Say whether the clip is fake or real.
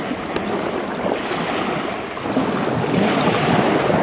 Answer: real